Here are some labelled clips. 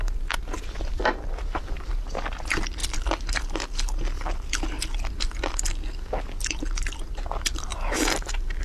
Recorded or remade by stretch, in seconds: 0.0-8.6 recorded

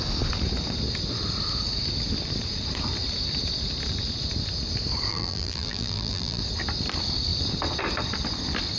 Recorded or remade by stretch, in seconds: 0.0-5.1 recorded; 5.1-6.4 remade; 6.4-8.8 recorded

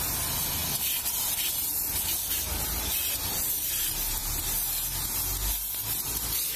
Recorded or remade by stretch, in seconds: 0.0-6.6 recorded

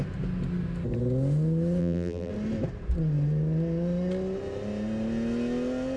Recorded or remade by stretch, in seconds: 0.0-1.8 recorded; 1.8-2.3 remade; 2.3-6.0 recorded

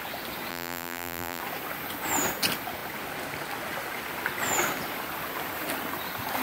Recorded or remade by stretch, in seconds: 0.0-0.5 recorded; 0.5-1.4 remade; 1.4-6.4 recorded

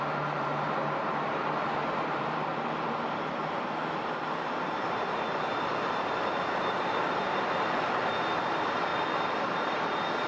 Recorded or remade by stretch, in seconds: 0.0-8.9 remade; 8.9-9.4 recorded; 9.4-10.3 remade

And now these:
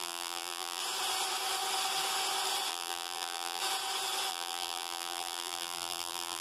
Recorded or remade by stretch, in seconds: 0.0-0.8 remade; 0.8-2.7 recorded; 2.7-3.6 remade; 3.6-4.3 recorded; 4.3-6.4 remade

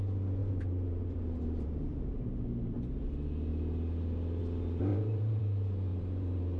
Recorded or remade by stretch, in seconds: 0.0-0.4 recorded; 0.4-2.8 remade; 2.8-4.9 recorded; 4.9-5.4 remade; 5.4-5.9 recorded; 5.9-6.6 remade